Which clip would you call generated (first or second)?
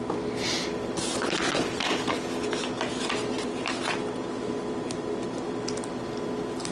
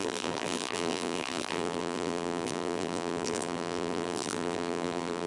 second